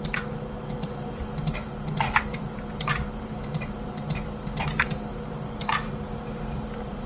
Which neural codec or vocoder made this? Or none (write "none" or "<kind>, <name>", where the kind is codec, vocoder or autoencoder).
vocoder, BigVGAN v2